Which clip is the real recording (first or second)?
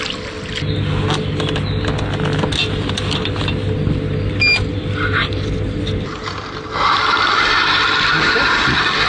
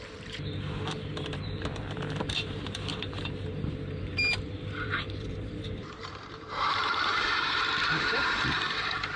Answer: first